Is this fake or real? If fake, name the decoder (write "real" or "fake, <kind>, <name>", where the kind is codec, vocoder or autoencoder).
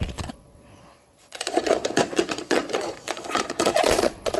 fake, vocoder, Vocos